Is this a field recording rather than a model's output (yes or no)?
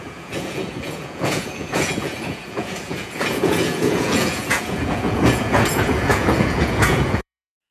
no